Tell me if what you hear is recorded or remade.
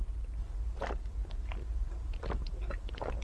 recorded